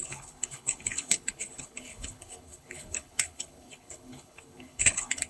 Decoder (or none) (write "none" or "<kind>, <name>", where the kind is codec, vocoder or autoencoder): codec, HILCodec